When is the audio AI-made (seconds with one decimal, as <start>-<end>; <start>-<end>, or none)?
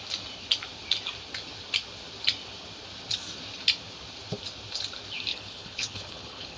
5.3-6.6